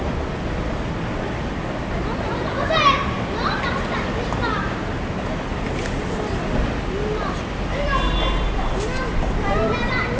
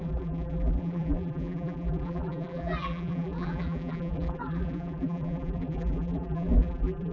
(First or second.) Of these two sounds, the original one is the first